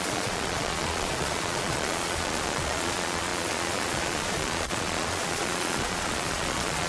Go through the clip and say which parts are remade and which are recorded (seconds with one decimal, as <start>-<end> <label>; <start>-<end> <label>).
0.0-6.9 remade